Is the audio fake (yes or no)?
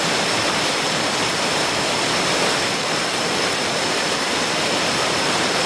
no